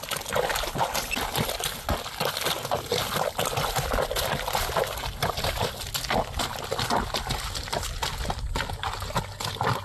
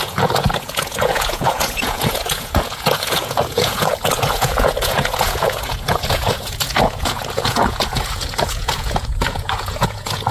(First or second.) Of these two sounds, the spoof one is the second